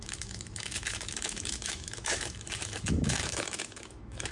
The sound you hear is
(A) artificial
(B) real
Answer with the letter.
A